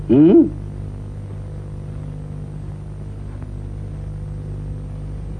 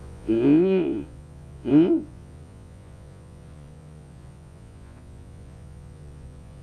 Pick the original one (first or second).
first